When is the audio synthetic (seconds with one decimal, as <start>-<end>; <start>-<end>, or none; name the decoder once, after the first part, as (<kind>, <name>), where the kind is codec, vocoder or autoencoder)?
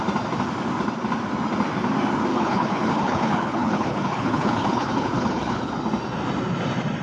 2.3-5.7 (codec, HILCodec)